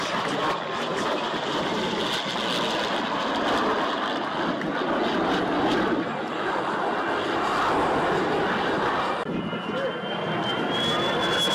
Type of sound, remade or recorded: recorded